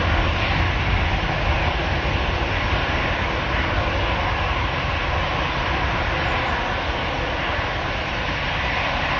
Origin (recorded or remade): recorded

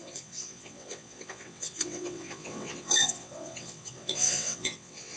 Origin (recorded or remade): remade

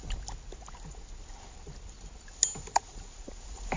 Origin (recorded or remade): recorded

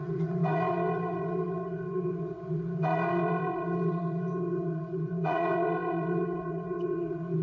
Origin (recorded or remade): remade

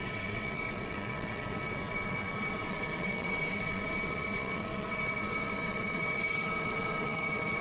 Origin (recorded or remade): remade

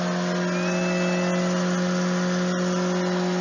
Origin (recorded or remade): recorded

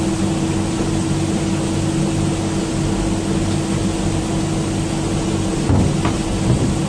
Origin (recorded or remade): recorded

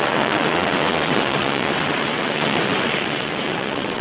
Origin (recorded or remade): remade